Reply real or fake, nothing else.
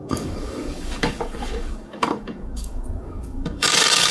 fake